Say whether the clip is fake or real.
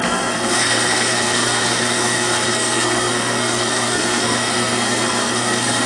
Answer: fake